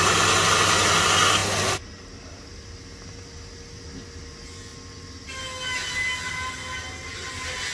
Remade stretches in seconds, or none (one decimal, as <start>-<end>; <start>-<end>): none